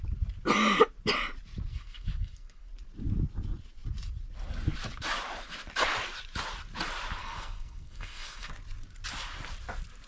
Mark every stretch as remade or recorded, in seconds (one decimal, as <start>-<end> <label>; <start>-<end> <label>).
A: 0.0-1.7 recorded; 1.7-2.7 remade; 2.7-7.2 recorded; 7.2-8.5 remade; 8.5-10.1 recorded